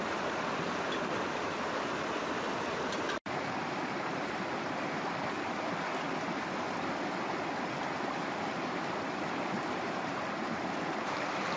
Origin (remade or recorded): remade